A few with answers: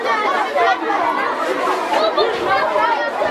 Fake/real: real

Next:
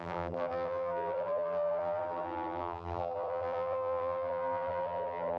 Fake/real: fake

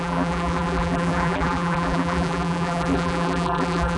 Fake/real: fake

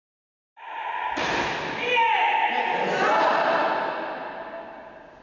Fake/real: real